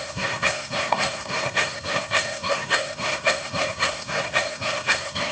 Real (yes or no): no